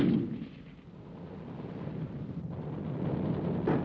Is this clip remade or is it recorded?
recorded